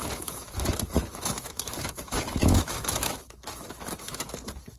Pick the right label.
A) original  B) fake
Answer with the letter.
B